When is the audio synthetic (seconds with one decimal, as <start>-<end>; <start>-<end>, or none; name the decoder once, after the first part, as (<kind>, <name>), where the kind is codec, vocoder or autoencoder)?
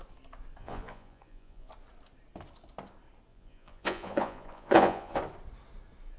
0.6-1.7 (vocoder, Vocos); 3.3-5.2